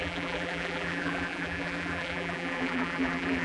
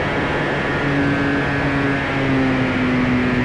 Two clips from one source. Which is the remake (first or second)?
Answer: first